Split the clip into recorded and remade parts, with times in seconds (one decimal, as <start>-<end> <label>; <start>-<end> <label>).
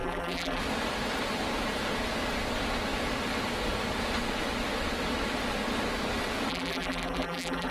0.0-0.6 remade; 0.6-6.5 recorded; 6.5-7.7 remade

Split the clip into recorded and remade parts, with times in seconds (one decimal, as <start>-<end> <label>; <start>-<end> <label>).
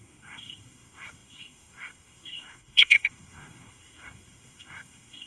0.0-5.3 remade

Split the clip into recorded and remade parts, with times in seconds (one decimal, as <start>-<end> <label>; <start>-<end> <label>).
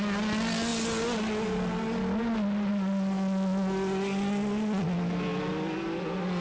0.0-6.4 recorded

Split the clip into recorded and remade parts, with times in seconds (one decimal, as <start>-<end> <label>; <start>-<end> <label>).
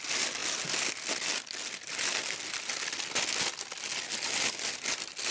0.0-5.3 recorded